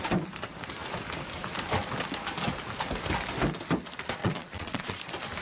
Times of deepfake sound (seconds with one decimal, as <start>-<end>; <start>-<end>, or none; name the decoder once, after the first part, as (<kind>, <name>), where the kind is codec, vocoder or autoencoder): 4.2-5.0 (vocoder, Vocos)